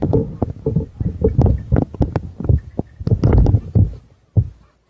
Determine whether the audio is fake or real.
real